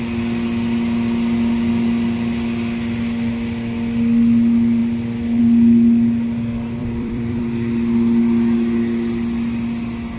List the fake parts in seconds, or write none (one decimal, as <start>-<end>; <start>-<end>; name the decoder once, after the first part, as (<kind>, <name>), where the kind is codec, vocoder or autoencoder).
6.8-7.4 (vocoder, BigVGAN v2)